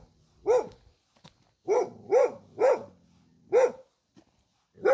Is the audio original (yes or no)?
yes